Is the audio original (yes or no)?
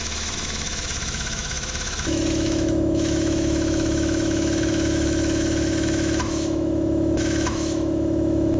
no